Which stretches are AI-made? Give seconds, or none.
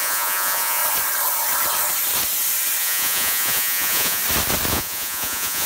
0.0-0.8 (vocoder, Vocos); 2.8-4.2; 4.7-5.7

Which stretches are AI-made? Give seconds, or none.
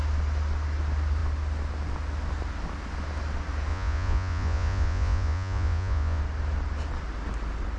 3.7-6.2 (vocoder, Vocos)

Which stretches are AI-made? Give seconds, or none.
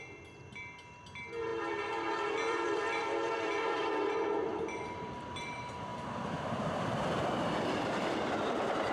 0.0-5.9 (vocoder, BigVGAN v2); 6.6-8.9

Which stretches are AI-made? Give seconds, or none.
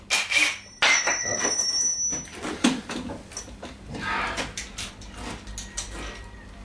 none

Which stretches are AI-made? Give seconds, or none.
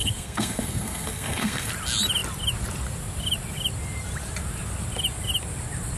0.0-1.7 (codec, SNAC)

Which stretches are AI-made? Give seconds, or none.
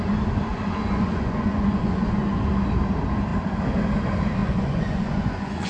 0.5-2.5 (vocoder, Vocos); 4.4-5.7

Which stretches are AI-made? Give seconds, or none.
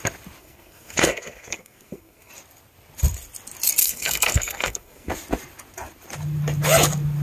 0.4-2.3 (codec, SNAC); 3.8-5.1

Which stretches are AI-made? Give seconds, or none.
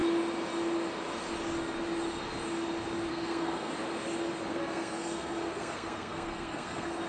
3.1-3.7 (codec, SNAC); 4.5-7.1